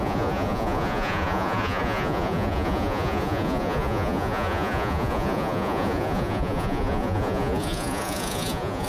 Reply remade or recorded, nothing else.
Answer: remade